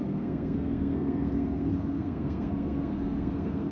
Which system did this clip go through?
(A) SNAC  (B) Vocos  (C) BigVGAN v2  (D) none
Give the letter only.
A